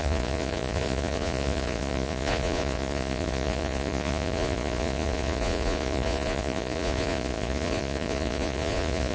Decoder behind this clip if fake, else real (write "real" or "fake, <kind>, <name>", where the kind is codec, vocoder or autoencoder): fake, vocoder, Vocos